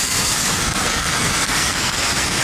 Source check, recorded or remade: remade